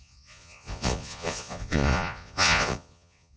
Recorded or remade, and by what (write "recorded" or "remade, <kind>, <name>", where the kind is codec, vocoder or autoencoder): remade, vocoder, Vocos